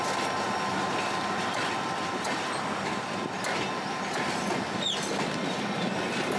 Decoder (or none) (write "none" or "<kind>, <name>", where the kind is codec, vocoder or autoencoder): none